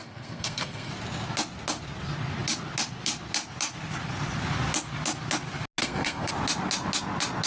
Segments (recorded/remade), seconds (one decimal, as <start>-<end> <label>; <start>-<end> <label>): 0.0-0.9 remade; 0.9-5.8 recorded; 5.8-6.3 remade; 6.3-7.5 recorded

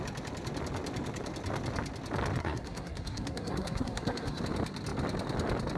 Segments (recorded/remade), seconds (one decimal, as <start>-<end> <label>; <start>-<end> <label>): 0.0-2.4 recorded; 2.4-4.4 remade; 4.4-5.8 recorded

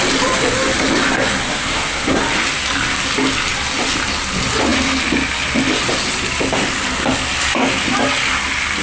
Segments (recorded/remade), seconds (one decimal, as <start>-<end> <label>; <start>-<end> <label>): 0.0-1.5 recorded; 1.5-2.2 remade; 2.2-8.8 recorded

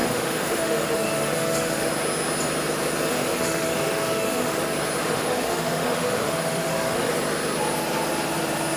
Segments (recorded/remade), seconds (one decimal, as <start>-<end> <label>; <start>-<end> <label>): 0.0-1.9 remade; 1.9-3.1 recorded; 3.1-4.6 remade; 4.6-5.0 recorded; 5.0-7.1 remade; 7.1-8.8 recorded

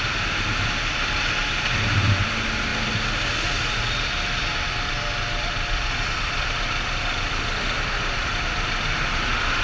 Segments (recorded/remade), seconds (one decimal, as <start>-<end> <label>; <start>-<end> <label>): 0.0-9.6 recorded